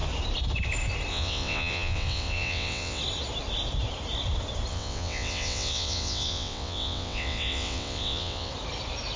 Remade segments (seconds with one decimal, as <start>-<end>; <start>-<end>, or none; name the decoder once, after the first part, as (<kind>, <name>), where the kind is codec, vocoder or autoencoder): 1.1-3.0 (vocoder, WaveNeXt); 4.7-8.5